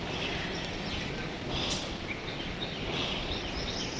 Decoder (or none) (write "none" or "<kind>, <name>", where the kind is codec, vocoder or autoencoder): none